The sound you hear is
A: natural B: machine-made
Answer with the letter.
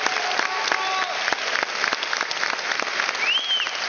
A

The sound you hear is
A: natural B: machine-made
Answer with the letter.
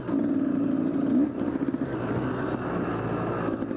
A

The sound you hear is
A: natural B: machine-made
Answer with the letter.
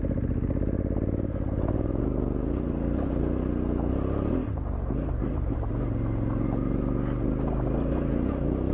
A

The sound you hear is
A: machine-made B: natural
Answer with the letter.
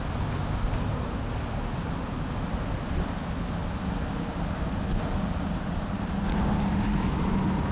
B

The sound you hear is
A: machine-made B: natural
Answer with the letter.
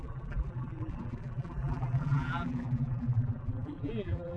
A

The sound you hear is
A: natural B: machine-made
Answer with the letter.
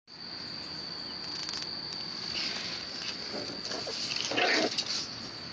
A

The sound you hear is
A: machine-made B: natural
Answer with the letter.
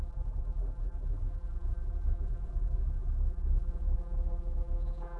A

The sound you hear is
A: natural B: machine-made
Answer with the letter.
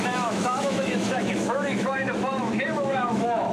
B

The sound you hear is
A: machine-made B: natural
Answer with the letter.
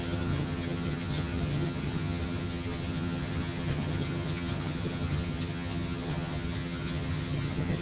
A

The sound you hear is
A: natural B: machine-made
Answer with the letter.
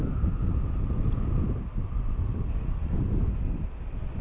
A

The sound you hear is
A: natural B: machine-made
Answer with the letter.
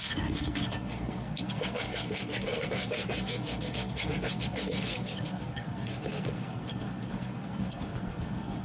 B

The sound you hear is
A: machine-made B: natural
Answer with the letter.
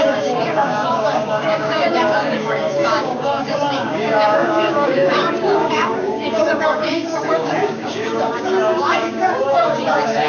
A